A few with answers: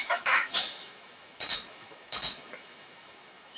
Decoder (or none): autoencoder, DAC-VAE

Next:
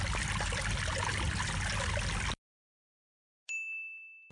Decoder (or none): none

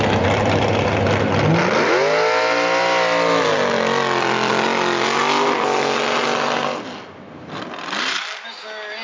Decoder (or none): none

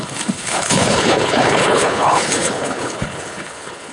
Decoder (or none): codec, HILCodec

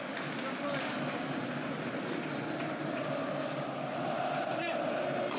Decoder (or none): none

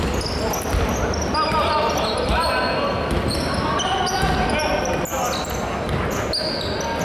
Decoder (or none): none